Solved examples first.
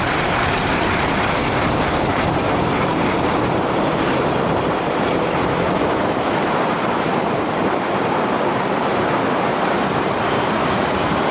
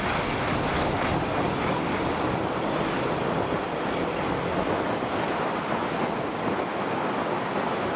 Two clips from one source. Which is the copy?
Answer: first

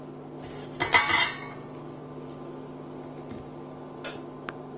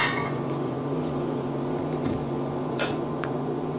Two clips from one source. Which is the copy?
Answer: second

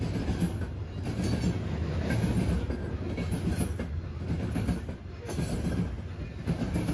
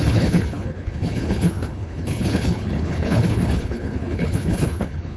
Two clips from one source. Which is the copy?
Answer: second